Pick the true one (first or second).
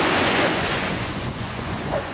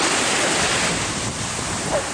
second